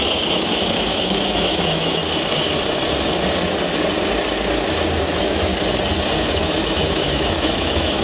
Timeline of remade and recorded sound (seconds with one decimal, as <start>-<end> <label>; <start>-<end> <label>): 0.0-2.0 remade; 2.0-5.0 recorded; 5.0-5.5 remade; 5.5-6.3 recorded; 6.3-8.0 remade